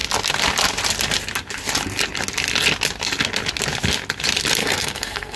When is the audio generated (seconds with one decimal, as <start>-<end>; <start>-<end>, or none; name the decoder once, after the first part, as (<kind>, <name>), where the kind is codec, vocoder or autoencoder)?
4.6-5.4 (codec, SNAC)